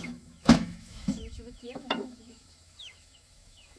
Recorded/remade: remade